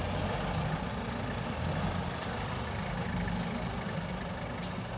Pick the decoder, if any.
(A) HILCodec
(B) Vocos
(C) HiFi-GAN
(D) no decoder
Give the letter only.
D